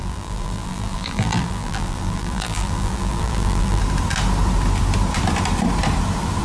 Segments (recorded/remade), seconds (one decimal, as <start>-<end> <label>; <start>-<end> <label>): 0.0-3.8 remade; 3.8-6.4 recorded